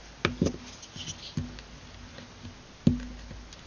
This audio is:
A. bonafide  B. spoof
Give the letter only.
A